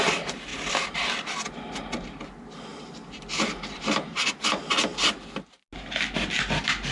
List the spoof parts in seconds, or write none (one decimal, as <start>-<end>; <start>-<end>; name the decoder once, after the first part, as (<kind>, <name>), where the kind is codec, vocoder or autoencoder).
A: 2.7-4.3 (vocoder, BigVGAN v2); 4.9-5.6